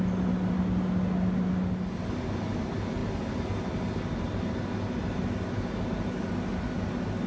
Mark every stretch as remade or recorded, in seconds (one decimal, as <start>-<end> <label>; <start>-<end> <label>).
0.0-7.3 recorded